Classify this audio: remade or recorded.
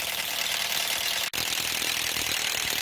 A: recorded